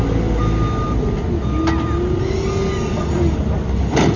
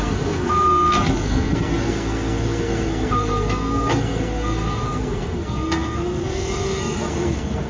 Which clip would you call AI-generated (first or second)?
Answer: second